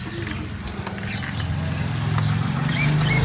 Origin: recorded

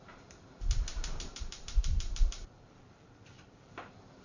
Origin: remade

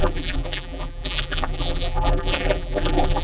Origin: remade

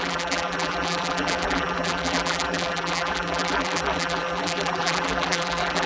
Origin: remade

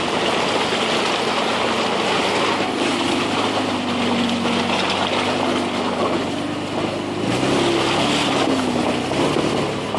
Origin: recorded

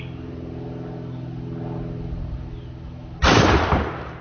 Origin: recorded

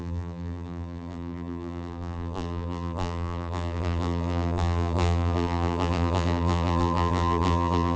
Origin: remade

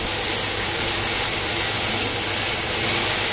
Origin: recorded